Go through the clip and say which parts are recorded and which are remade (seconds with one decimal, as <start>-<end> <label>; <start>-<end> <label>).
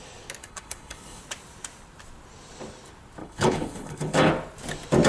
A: 0.0-0.4 recorded; 0.4-1.2 remade; 1.2-3.2 recorded; 3.2-4.3 remade; 4.3-5.1 recorded